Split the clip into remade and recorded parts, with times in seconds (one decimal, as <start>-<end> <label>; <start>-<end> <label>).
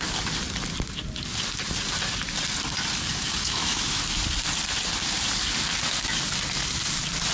0.0-3.4 recorded; 3.4-4.0 remade; 4.0-7.3 recorded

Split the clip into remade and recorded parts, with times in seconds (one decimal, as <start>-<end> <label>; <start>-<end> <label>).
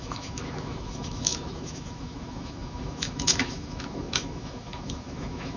0.0-5.6 remade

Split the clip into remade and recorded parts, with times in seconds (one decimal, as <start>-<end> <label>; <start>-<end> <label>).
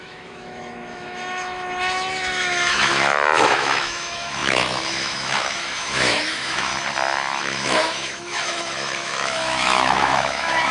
0.0-6.7 remade; 6.7-7.4 recorded; 7.4-10.7 remade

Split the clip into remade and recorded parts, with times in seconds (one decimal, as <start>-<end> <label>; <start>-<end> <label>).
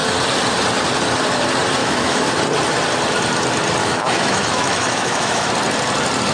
0.0-1.8 recorded; 1.8-2.3 remade; 2.3-3.8 recorded; 3.8-5.5 remade; 5.5-6.3 recorded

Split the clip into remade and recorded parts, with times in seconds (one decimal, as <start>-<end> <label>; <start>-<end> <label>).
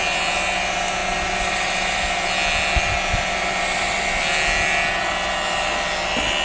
0.0-6.4 recorded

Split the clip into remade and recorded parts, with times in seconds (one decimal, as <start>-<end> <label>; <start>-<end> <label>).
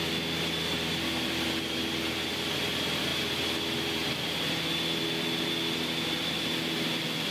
0.0-7.3 recorded